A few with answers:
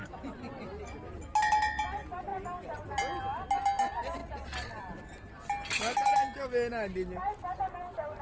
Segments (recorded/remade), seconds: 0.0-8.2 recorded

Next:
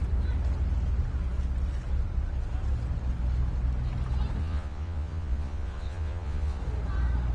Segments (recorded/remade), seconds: 0.0-4.4 recorded; 4.4-6.6 remade; 6.6-7.3 recorded

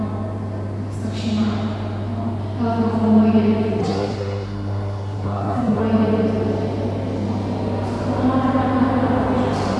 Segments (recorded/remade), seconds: 0.0-3.8 recorded; 3.8-5.8 remade; 5.8-9.8 recorded